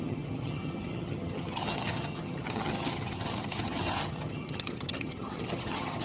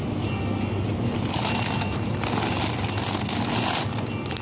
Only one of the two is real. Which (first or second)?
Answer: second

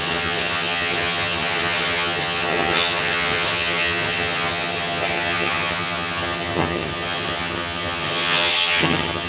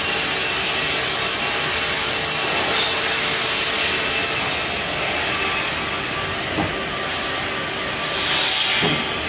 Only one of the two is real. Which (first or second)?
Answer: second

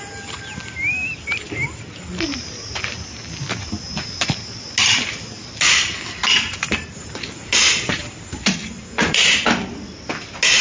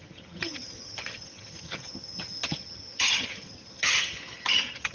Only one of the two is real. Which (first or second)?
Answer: first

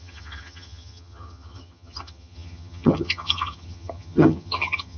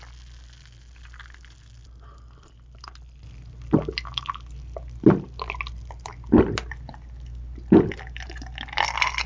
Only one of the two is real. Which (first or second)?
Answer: second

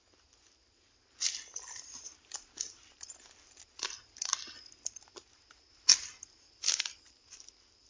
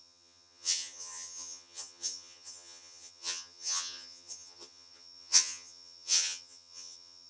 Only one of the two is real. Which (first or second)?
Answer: first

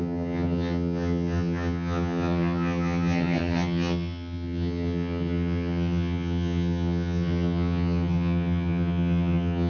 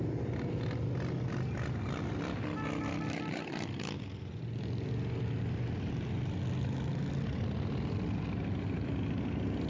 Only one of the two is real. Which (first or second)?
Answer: second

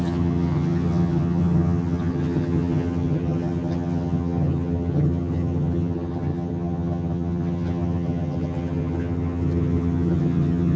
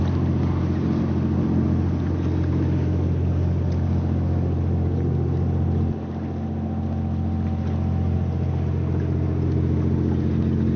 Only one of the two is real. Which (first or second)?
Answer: second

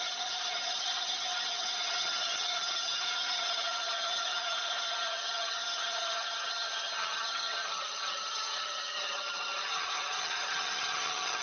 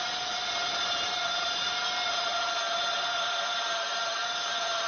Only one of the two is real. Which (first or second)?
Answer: second